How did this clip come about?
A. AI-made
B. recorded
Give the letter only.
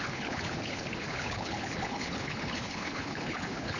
A